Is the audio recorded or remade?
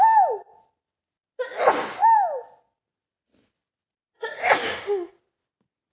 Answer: recorded